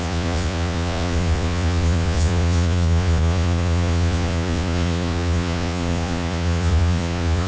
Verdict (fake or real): fake